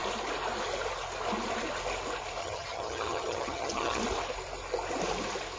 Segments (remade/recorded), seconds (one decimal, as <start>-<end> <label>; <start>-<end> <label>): 0.0-2.4 recorded; 2.4-4.0 remade; 4.0-5.6 recorded